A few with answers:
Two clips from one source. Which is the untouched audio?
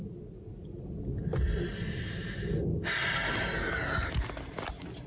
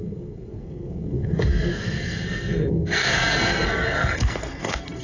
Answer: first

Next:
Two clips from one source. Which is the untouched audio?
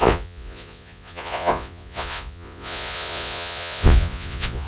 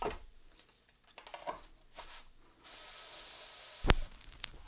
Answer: second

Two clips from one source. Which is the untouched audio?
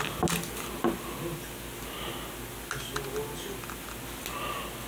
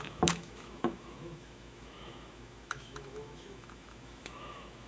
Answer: first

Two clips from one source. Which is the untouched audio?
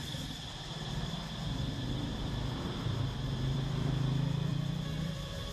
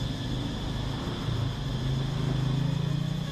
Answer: second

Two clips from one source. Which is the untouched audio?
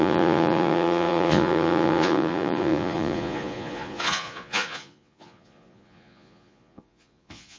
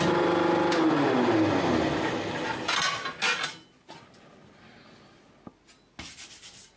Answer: second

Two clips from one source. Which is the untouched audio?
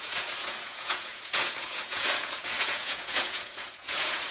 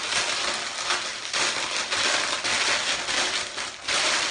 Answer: second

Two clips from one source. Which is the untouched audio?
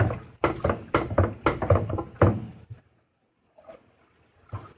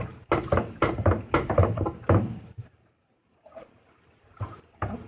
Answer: first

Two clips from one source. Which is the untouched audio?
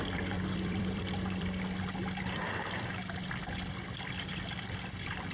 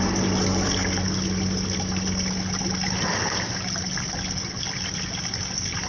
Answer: second